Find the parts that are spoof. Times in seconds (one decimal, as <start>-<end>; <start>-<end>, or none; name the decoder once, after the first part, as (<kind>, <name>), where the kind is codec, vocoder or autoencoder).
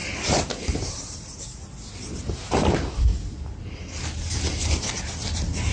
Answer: none